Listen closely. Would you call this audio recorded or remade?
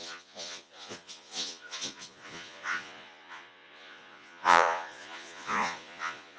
remade